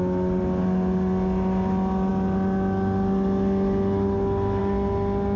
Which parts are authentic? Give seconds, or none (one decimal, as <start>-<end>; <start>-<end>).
0.0-5.4

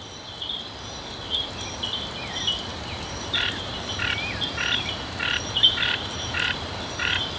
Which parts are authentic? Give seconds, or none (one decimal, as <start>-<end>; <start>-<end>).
0.0-2.7